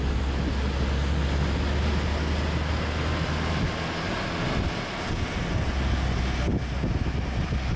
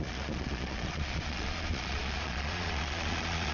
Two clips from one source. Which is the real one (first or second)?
first